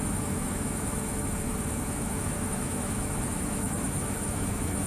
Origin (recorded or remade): remade